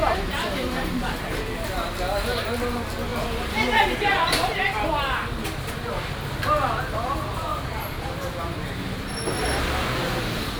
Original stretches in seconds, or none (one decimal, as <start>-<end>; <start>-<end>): 1.3-7.5; 8.1-10.6